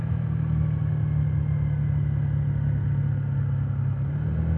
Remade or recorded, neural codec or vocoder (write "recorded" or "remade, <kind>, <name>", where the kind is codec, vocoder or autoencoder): recorded